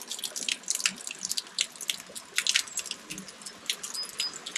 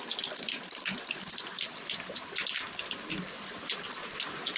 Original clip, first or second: first